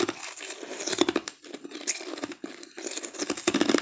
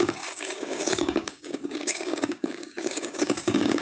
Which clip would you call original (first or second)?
first